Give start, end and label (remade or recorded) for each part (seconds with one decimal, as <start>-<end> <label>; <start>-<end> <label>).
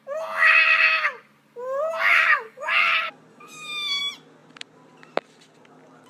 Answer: 0.0-2.1 recorded; 2.1-2.9 remade; 2.9-3.3 recorded; 3.3-4.0 remade; 4.0-6.1 recorded